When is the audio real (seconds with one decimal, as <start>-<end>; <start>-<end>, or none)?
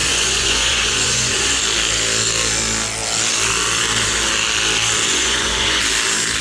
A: 1.6-5.1; 5.8-6.4